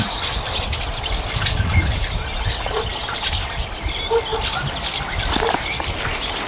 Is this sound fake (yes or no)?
no